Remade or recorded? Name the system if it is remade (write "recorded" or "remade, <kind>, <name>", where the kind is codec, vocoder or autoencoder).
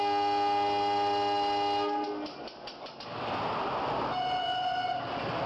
recorded